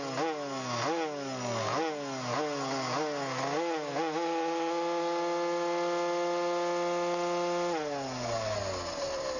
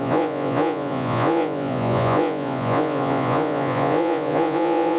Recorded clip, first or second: first